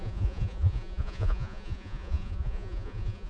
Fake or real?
fake